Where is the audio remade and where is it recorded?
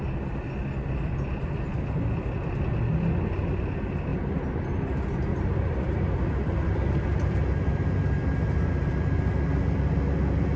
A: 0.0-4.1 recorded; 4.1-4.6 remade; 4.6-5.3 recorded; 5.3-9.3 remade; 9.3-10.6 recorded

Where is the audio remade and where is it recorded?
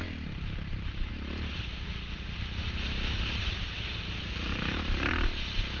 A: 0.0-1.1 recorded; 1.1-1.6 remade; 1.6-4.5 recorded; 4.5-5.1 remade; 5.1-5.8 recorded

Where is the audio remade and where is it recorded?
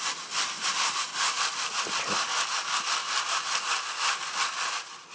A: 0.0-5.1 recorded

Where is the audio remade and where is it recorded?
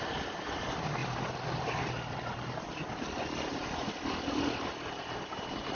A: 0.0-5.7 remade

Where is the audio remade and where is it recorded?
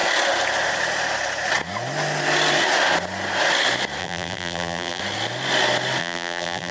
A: 0.0-4.0 recorded; 4.0-5.0 remade; 5.0-6.0 recorded; 6.0-6.7 remade